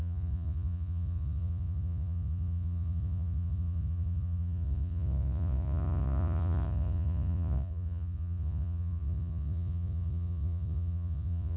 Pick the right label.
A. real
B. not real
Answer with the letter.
B